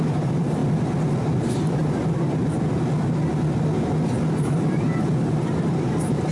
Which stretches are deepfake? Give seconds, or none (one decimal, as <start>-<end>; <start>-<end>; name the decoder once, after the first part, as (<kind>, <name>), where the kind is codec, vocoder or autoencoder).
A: 0.0-0.6 (vocoder, BigVGAN v2); 1.3-1.8; 4.4-6.3